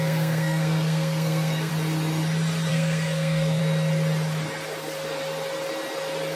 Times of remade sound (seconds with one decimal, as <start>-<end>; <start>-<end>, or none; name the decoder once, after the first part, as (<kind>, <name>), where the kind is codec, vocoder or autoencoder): 0.0-1.7 (codec, SNAC); 2.7-3.6